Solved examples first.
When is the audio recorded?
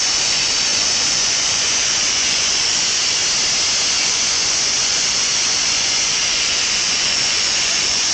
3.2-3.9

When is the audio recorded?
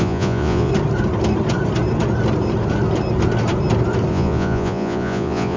0.7-4.1